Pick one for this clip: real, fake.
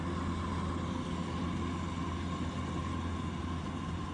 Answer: real